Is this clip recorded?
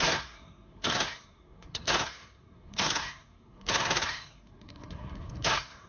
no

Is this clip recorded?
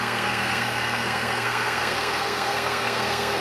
no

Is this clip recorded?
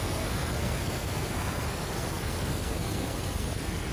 no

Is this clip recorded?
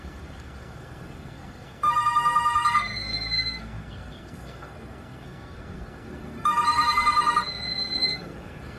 no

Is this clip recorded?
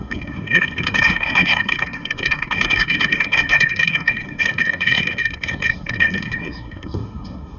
no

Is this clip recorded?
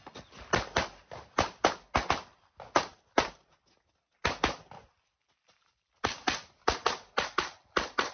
yes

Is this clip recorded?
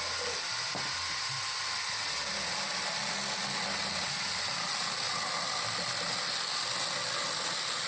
yes